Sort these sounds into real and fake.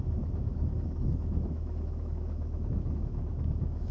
fake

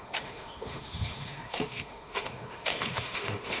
fake